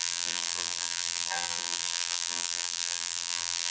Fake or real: fake